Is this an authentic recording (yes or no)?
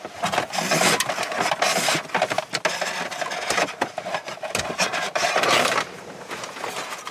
yes